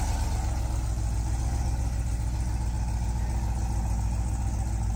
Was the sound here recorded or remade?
recorded